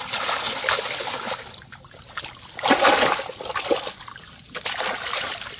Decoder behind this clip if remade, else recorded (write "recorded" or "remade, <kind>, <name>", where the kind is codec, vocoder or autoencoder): recorded